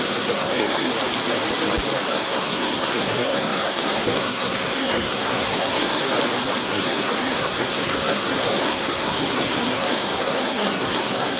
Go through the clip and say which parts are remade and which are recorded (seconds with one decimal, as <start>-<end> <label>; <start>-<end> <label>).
0.0-0.9 remade; 0.9-2.1 recorded; 2.1-6.0 remade; 6.0-6.6 recorded; 6.6-11.4 remade